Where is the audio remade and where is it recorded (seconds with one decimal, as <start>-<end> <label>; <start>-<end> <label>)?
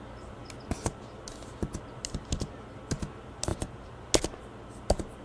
0.0-3.5 recorded; 3.5-4.1 remade; 4.1-5.2 recorded